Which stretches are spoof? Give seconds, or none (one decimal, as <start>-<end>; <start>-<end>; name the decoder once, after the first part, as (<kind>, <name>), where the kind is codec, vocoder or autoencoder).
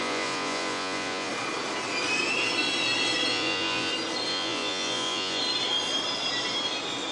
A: 0.0-1.3 (vocoder, Vocos); 3.3-3.9; 4.3-5.4